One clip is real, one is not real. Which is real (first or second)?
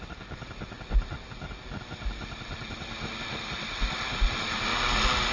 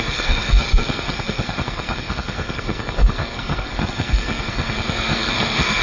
first